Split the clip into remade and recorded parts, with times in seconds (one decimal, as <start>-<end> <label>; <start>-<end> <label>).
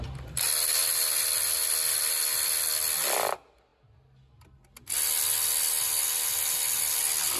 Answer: 0.0-7.4 recorded